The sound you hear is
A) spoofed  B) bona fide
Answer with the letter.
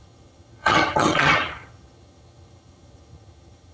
A